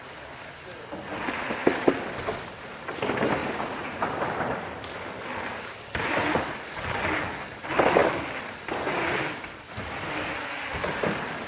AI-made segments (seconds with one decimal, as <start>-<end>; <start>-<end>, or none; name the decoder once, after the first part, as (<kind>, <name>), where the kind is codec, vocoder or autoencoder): 3.4-4.0 (vocoder, Vocos)